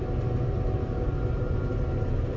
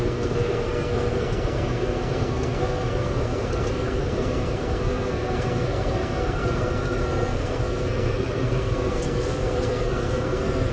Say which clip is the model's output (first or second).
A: second